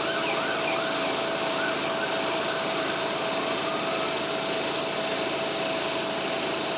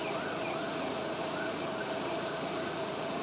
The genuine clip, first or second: first